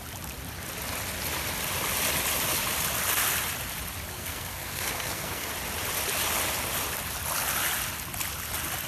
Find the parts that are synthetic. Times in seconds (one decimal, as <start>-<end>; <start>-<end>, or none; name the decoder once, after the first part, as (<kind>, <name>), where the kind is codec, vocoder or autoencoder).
4.1-5.5 (codec, SNAC)